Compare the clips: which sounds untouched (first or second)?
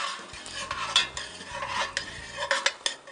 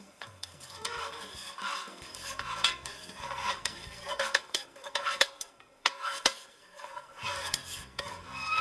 first